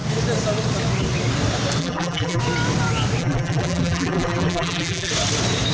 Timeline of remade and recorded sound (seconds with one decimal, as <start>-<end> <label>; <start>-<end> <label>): 0.0-1.8 recorded; 1.8-2.4 remade; 2.4-3.2 recorded; 3.2-5.1 remade; 5.1-5.7 recorded